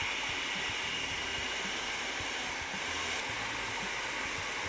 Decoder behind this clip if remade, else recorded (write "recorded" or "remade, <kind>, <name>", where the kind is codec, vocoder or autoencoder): recorded